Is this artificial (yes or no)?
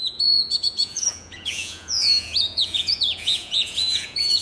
yes